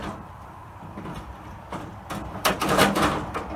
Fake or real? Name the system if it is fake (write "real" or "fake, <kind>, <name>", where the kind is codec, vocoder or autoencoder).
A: fake, vocoder, BigVGAN v2